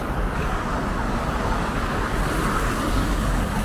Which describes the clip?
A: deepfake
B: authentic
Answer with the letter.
A